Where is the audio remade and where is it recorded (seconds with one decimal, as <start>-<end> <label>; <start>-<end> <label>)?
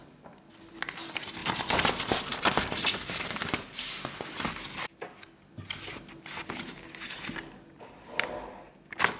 0.0-9.2 recorded